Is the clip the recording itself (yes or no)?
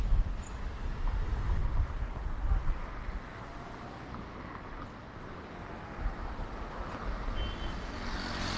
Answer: yes